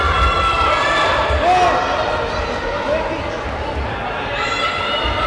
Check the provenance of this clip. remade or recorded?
recorded